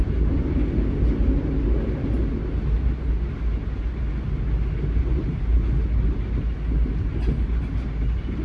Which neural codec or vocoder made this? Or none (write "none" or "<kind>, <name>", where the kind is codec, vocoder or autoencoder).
none